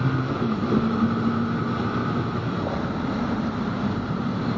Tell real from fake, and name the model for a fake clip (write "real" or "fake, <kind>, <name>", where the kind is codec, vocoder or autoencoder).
real